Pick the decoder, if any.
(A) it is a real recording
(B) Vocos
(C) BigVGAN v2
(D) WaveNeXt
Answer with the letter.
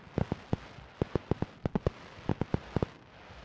A